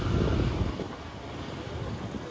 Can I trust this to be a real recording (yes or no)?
yes